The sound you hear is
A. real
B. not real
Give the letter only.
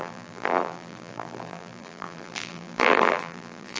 B